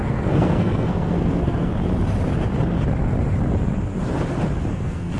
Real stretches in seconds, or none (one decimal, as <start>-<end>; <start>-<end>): 1.7-4.7